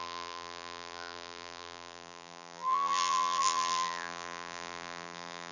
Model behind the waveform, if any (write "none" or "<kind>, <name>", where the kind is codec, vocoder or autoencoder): vocoder, BigVGAN v2